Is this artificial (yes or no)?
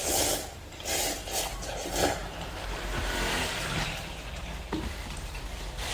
yes